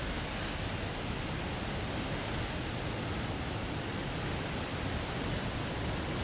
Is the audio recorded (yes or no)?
yes